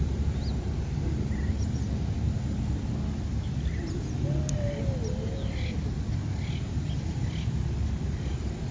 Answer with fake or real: real